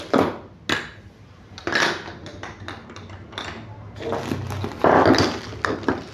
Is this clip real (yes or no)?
yes